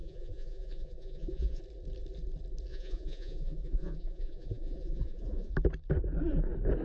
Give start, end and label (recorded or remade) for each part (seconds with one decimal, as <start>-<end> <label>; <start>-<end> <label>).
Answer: 0.0-1.6 remade; 1.6-2.7 recorded; 2.7-5.5 remade; 5.5-6.8 recorded